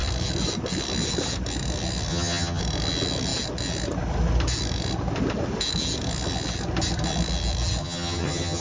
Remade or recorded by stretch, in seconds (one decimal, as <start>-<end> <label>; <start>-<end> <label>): 0.0-2.1 recorded; 2.1-2.6 remade; 2.6-7.8 recorded; 7.8-8.6 remade